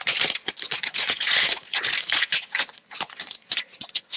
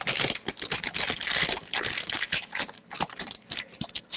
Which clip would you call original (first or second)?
second